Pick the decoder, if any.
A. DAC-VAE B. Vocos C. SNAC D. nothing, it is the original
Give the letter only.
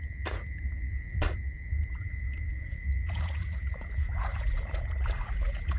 B